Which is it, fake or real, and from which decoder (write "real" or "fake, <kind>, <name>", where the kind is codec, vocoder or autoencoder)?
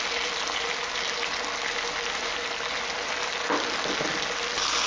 real